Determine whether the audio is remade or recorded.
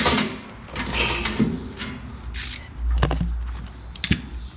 recorded